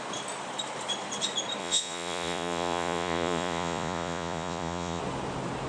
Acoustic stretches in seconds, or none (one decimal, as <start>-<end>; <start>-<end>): 0.0-1.6; 5.0-5.7

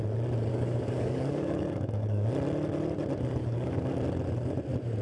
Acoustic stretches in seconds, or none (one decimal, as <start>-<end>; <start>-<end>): 0.0-0.5; 2.3-3.4; 4.0-5.0

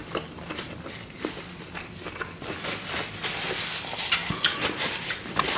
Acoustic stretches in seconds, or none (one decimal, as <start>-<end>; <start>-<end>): 0.0-4.2

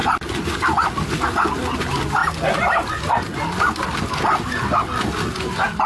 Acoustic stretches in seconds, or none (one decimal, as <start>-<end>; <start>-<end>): 1.1-5.9

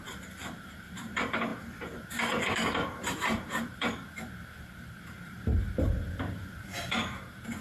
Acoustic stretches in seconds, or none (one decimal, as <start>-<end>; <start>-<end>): none

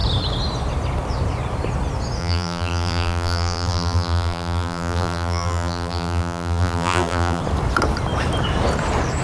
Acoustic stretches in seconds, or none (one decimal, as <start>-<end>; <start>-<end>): 0.0-2.2; 7.4-9.2

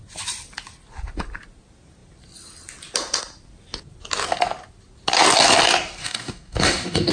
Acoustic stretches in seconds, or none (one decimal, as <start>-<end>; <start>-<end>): 0.0-6.0